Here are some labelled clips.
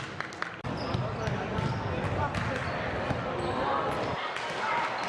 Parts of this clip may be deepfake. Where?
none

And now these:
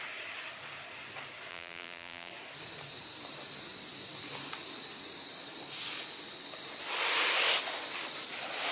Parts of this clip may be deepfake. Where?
1.5-2.3 (vocoder, BigVGAN v2)

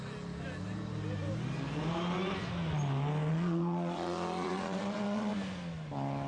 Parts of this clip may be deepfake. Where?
3.3-5.3 (vocoder, Vocos)

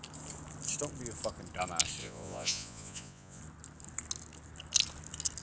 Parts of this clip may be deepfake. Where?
2.0-3.4 (vocoder, Vocos)

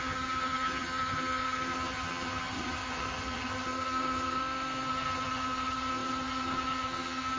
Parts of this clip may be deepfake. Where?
0.0-4.4 (vocoder, HiFi-GAN); 4.9-7.4